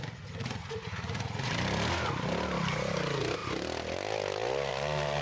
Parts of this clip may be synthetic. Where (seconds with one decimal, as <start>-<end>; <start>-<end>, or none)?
0.4-1.5

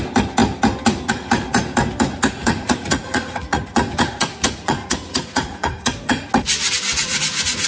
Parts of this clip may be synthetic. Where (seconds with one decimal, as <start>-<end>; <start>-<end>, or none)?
2.4-6.3; 6.9-7.7